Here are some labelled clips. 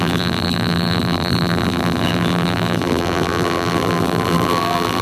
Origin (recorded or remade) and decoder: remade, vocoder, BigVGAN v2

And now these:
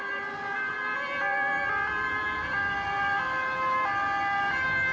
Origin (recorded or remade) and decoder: recorded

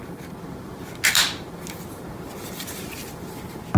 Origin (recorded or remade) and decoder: recorded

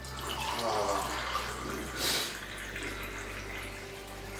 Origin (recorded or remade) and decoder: recorded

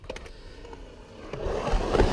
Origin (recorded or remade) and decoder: recorded